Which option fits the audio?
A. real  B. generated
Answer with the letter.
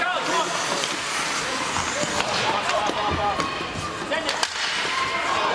A